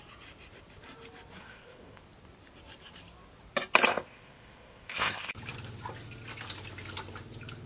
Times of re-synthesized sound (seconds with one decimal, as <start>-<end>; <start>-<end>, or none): 1.4-2.0; 3.9-5.3